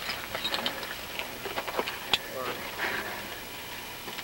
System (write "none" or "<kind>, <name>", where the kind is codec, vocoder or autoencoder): none